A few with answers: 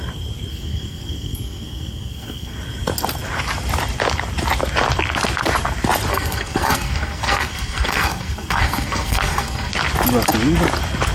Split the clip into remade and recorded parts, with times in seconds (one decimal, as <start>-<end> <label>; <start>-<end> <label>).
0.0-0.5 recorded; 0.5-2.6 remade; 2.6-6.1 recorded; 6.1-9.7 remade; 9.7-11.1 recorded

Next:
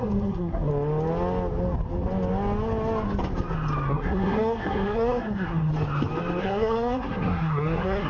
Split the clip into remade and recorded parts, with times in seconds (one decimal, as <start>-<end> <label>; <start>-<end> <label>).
0.0-0.7 remade; 0.7-3.9 recorded; 3.9-5.7 remade; 5.7-6.4 recorded; 6.4-8.1 remade

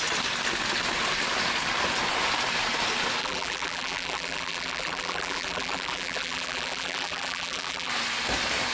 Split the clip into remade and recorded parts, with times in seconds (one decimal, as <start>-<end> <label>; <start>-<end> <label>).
0.0-3.2 recorded; 3.2-7.9 remade; 7.9-8.7 recorded

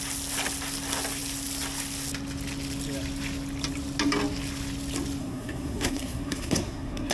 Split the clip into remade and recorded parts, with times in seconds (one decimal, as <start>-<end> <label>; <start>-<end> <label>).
0.0-5.2 recorded; 5.2-7.1 remade

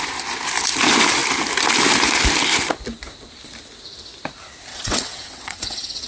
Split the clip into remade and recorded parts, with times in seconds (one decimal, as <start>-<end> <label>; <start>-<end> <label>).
0.0-4.7 recorded; 4.7-6.1 remade

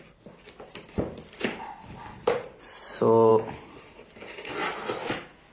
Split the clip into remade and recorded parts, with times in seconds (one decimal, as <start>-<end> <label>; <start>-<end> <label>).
0.0-5.5 recorded